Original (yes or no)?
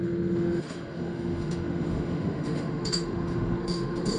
no